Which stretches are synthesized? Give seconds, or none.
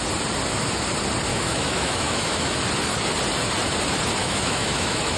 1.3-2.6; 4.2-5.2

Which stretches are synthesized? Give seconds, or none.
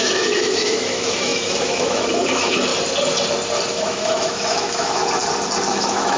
0.0-2.7; 3.7-5.0; 5.7-6.2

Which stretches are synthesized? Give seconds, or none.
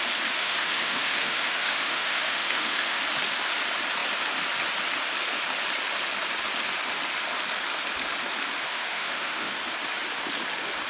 0.4-3.0; 8.7-9.5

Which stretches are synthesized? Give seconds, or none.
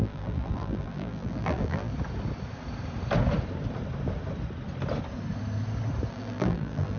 0.0-1.9; 6.1-7.0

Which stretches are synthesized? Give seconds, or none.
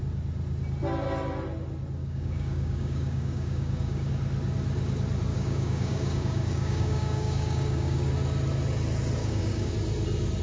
2.0-4.1; 5.3-8.1; 9.2-9.7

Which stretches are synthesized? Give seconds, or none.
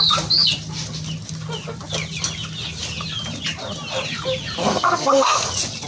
4.6-5.5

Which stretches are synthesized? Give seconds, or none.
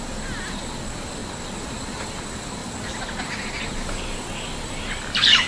none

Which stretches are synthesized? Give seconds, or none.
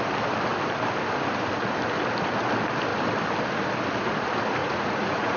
4.6-5.4